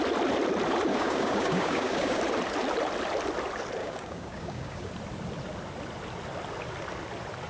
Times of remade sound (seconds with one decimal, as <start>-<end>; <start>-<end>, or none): 0.9-2.2; 3.8-4.9